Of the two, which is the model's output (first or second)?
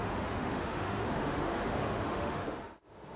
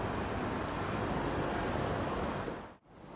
first